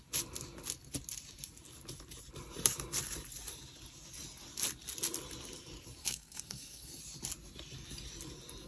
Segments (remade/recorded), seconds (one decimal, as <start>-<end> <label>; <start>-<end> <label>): 0.0-6.0 recorded; 6.0-7.0 remade; 7.0-8.7 recorded